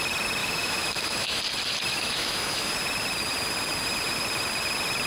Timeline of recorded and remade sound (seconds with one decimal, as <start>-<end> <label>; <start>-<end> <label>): 0.0-0.4 recorded; 0.4-1.4 remade; 1.4-1.9 recorded; 1.9-2.7 remade; 2.7-5.1 recorded